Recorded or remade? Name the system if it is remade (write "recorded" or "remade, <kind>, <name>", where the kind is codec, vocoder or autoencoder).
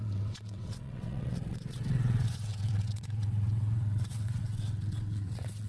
remade, vocoder, WaveNeXt